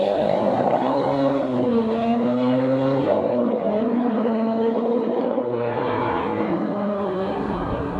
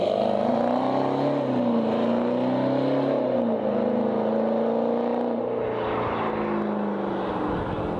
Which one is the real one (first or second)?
second